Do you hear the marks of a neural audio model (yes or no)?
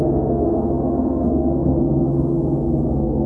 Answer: yes